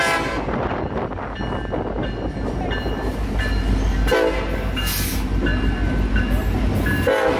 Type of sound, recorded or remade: recorded